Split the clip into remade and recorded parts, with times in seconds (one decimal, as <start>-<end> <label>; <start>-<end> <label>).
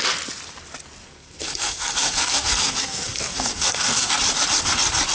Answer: 0.0-1.0 recorded; 1.0-4.1 remade; 4.1-5.1 recorded